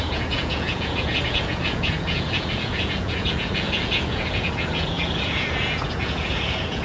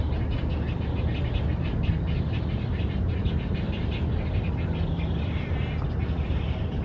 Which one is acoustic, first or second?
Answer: second